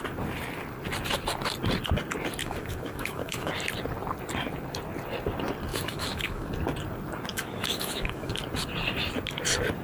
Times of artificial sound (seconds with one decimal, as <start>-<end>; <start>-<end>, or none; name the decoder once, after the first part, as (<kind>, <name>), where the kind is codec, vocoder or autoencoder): 2.4-3.5 (autoencoder, DAC-VAE); 5.7-6.5; 7.3-8.4